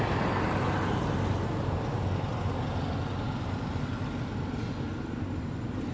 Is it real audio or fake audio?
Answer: real